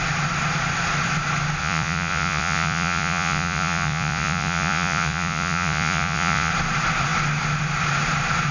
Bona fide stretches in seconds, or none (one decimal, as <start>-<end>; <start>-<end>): 0.0-1.6; 6.5-8.5